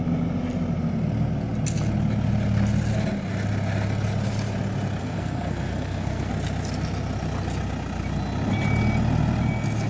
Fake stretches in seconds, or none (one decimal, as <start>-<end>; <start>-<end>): 5.0-6.3

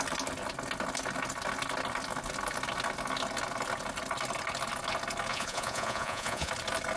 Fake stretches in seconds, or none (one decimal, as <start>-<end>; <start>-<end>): 5.3-6.5

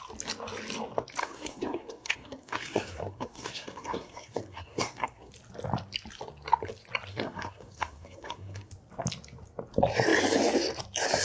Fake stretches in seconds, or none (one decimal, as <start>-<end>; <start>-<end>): 1.2-5.3; 7.1-8.7

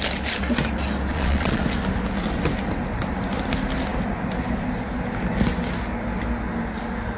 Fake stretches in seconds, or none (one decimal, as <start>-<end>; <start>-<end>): 1.1-1.6

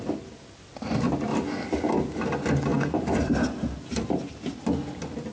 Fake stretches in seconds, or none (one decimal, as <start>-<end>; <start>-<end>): 1.3-1.9

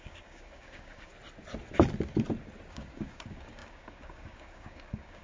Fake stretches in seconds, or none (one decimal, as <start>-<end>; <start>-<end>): 0.0-1.1; 2.7-5.2

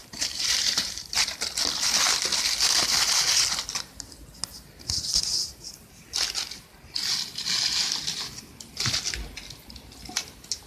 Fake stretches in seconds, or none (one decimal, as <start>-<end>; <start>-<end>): 0.0-1.2

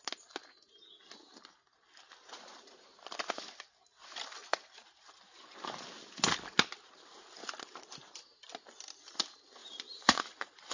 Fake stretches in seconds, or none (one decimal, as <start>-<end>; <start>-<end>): 4.4-5.0; 9.6-10.7